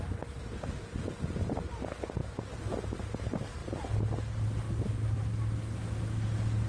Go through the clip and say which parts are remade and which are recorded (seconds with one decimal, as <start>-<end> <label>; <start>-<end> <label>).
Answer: 0.0-6.7 recorded